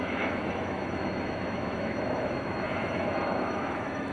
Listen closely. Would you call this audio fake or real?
fake